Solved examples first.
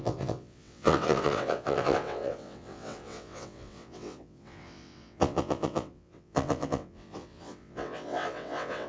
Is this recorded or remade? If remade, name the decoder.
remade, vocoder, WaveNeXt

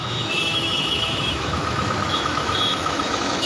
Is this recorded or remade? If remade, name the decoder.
remade, autoencoder, DAC-VAE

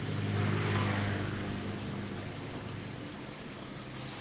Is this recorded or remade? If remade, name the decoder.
recorded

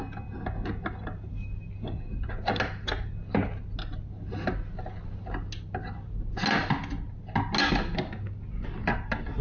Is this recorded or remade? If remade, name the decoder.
recorded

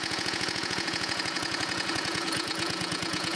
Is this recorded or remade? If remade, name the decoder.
remade, vocoder, Vocos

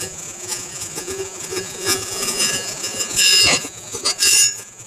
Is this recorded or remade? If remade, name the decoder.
remade, vocoder, Vocos